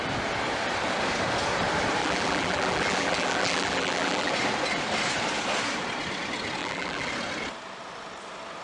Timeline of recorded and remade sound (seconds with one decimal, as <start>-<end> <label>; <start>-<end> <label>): 0.0-2.0 recorded; 2.0-4.3 remade; 4.3-6.6 recorded; 6.6-7.1 remade; 7.1-8.6 recorded